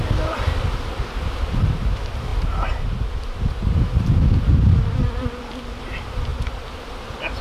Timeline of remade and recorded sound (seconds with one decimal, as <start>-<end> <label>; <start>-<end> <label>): 0.0-7.4 recorded